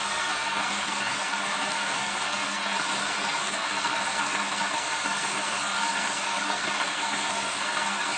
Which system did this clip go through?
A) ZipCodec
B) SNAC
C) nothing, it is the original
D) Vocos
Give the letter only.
B